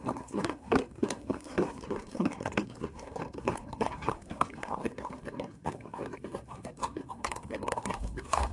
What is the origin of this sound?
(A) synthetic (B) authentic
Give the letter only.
A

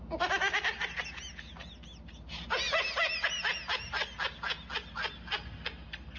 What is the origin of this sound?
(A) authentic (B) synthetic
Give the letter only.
A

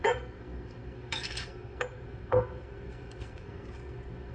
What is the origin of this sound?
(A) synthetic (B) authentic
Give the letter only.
A